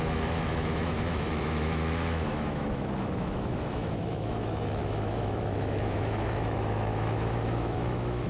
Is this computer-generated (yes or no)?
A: yes